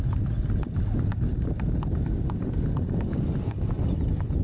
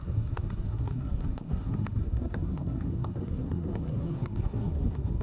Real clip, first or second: first